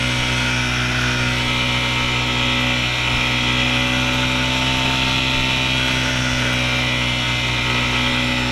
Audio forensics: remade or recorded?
recorded